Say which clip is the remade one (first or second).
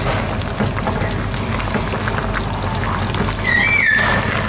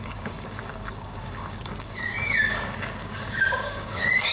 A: second